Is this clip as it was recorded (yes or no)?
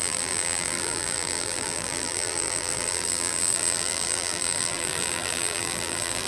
no